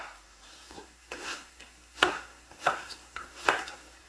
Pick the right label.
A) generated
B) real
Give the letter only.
A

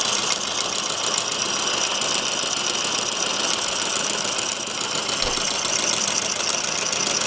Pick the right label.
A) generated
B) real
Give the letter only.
B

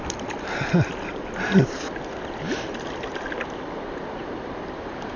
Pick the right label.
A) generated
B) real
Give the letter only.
B